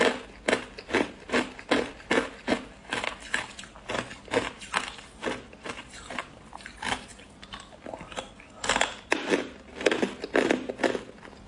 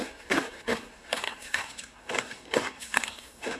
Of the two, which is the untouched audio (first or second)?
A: first